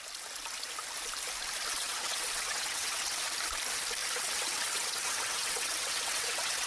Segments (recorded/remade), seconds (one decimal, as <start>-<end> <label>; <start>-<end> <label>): 0.0-1.7 recorded; 1.7-3.1 remade; 3.1-4.0 recorded; 4.0-6.7 remade